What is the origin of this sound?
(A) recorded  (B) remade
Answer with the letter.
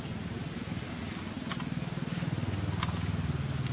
A